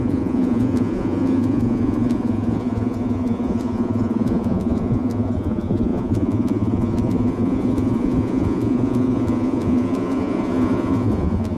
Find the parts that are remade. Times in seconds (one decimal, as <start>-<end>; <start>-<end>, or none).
0.0-11.6